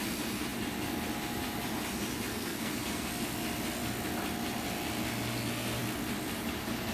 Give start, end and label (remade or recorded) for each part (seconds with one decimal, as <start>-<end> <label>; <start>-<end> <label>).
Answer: 0.0-2.3 recorded; 2.3-3.1 remade; 3.1-6.9 recorded